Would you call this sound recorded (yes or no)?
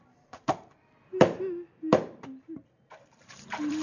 no